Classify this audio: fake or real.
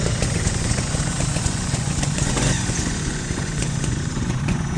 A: fake